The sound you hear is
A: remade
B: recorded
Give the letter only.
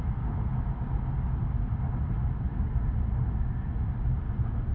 B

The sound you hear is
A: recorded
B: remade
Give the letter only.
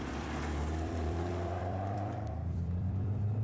B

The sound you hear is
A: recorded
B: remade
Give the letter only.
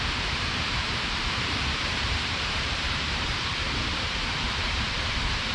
B